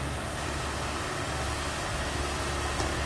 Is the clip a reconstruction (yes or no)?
no